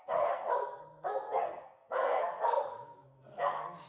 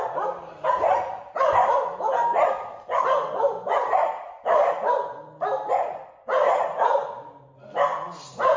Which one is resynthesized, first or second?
first